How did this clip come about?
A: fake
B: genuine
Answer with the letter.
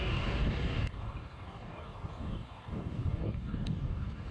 A